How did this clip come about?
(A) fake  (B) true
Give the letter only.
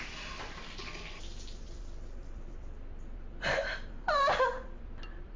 A